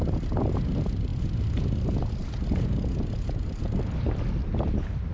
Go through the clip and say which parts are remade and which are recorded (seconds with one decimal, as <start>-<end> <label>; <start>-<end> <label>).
0.0-5.1 recorded